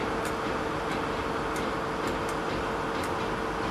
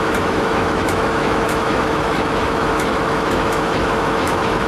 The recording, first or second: first